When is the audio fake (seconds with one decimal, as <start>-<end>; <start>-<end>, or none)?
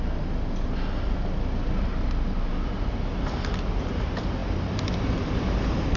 1.9-2.5; 4.4-6.0